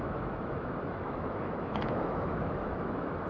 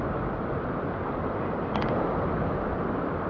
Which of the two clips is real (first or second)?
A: second